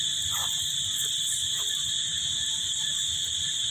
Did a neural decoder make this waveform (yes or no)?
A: no